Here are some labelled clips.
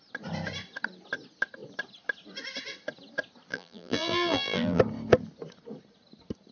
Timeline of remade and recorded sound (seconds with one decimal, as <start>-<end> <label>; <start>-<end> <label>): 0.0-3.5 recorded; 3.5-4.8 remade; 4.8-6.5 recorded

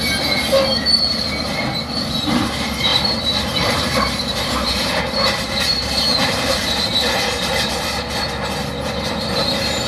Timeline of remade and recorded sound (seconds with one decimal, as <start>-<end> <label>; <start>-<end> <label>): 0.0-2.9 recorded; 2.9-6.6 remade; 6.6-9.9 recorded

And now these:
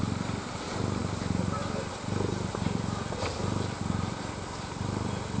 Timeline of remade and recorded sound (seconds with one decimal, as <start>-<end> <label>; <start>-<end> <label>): 0.0-5.4 recorded